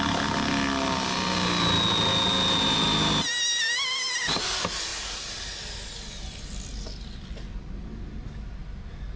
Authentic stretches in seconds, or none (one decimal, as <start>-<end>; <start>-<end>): 0.0-9.2